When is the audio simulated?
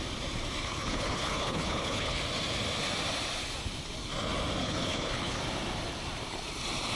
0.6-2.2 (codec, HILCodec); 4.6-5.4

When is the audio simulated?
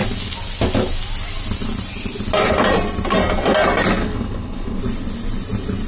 4.0-4.8 (codec, HILCodec)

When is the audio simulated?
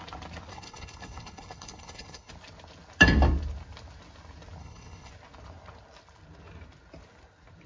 0.5-2.3 (codec, HILCodec); 4.6-5.1